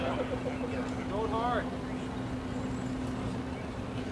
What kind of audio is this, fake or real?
real